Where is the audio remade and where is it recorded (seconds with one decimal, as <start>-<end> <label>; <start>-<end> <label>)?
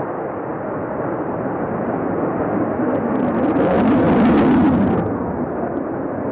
0.0-0.5 recorded; 0.5-1.8 remade; 1.8-6.3 recorded